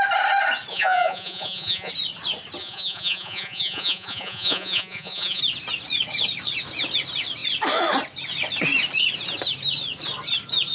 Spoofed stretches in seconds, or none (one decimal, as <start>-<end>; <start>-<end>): 0.7-1.9; 2.6-5.4